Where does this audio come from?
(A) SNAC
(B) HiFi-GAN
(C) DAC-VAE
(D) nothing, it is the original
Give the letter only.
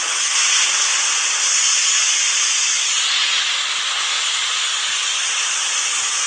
D